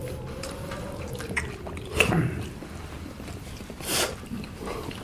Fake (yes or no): yes